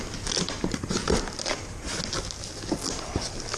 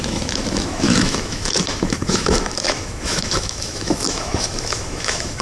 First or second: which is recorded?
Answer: first